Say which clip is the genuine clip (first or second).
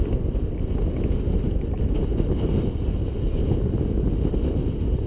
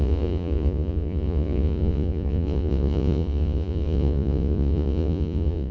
first